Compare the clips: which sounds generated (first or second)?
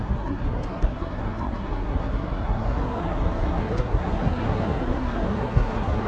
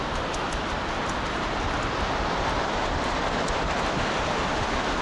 first